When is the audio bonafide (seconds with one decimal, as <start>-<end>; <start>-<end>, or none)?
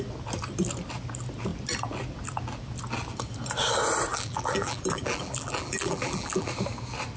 0.0-4.1; 6.5-7.2